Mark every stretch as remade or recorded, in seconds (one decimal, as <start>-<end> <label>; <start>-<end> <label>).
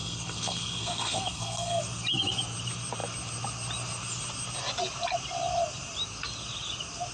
0.0-1.8 remade; 1.8-7.1 recorded